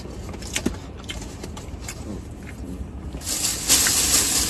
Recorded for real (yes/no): yes